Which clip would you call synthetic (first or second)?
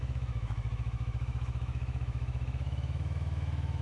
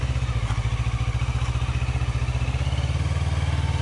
first